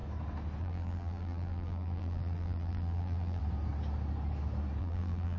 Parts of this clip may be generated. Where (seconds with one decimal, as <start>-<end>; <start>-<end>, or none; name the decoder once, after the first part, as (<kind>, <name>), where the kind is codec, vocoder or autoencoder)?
0.6-3.4 (vocoder, BigVGAN v2); 4.8-5.4